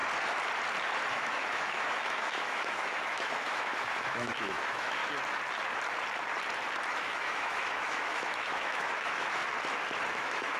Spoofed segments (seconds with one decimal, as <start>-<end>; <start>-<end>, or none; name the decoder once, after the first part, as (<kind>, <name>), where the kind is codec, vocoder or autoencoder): 1.1-5.0 (autoencoder, DAC-VAE); 6.9-9.4; 10.1-10.6